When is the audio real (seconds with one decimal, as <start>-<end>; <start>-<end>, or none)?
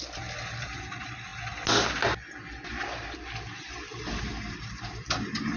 1.3-4.2